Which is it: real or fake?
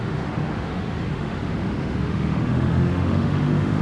fake